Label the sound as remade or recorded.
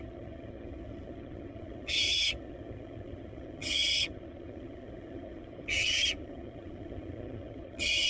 remade